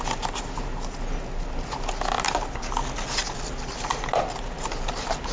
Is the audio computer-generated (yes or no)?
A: no